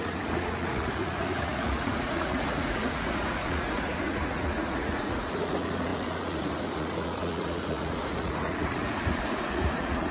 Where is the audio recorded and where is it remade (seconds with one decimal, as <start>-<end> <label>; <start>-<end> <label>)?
0.0-10.1 remade